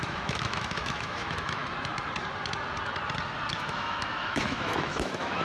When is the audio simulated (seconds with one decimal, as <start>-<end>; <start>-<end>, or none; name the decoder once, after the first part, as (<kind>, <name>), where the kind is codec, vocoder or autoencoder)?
0.0-1.6 (autoencoder, DAC-VAE); 3.5-5.4